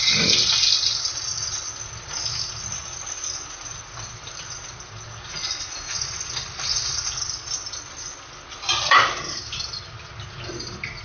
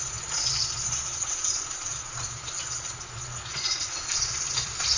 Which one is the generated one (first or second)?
second